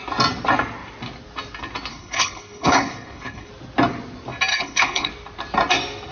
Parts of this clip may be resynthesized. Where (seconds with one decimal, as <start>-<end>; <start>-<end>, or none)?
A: 1.9-3.5; 4.5-5.1